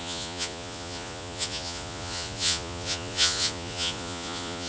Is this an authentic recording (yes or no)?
no